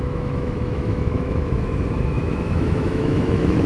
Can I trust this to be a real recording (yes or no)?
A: no